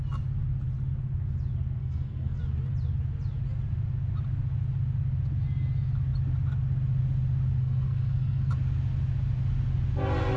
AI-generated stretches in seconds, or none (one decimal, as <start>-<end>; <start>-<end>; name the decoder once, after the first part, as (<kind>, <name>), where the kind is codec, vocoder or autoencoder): 1.8-2.4 (codec, SNAC); 7.6-8.5